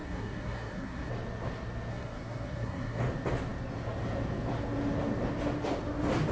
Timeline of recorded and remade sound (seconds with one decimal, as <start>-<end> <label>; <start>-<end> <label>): 0.0-1.1 remade; 1.1-1.9 recorded; 1.9-3.0 remade; 3.0-6.3 recorded